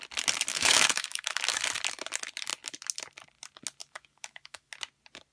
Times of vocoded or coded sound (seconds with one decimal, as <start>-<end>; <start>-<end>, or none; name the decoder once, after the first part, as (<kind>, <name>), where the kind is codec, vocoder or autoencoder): 0.5-1.6 (autoencoder, DAC-VAE); 3.8-4.7